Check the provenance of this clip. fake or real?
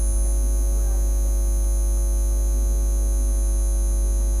real